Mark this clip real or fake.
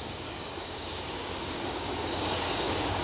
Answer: fake